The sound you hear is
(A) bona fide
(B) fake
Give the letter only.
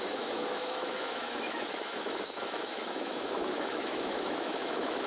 B